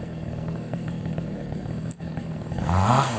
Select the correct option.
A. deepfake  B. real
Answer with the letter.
A